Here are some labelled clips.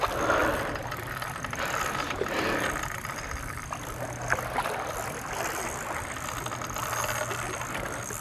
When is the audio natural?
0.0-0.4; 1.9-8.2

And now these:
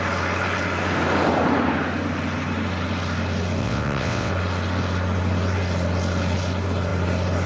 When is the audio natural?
0.0-3.6; 4.3-7.5

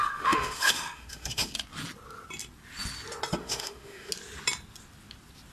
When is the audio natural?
1.5-3.4; 4.1-5.5

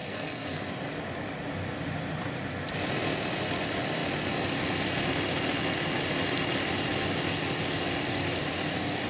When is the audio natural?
0.7-9.1

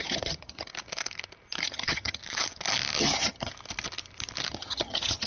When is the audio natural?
0.7-1.6; 2.2-3.0; 3.5-4.5

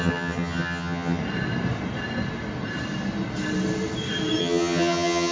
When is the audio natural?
1.2-4.4

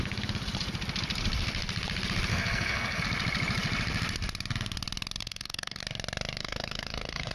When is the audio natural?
0.0-2.3; 3.0-5.2; 5.8-6.4